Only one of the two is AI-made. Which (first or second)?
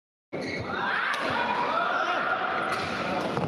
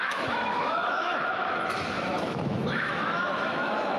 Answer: second